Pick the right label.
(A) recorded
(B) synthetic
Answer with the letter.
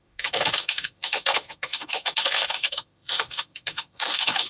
B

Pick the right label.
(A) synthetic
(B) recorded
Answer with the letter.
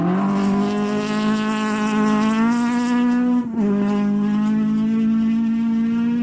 B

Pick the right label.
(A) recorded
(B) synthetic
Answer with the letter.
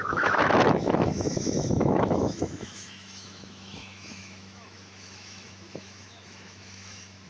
B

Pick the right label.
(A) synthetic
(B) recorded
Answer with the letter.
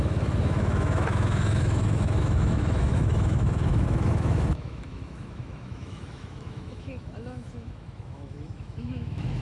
A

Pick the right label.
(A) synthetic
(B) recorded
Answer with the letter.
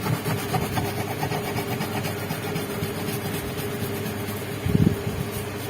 B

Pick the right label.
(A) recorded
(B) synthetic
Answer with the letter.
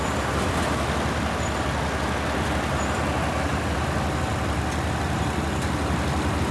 A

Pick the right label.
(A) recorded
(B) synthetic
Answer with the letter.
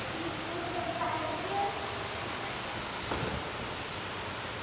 A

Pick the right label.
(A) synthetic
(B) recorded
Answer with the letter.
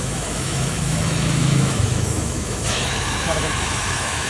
A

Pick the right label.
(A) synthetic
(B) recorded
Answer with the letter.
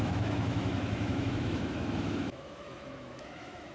A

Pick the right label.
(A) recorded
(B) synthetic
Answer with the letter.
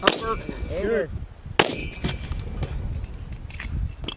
A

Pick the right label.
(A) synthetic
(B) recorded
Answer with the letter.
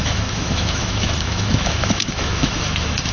A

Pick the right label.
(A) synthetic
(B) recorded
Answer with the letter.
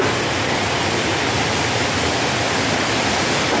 B